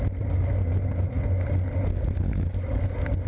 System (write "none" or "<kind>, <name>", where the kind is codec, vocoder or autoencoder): none